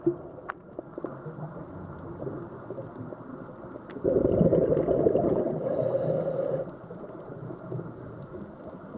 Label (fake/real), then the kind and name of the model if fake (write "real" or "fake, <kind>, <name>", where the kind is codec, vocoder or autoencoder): real